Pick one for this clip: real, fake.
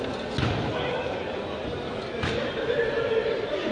real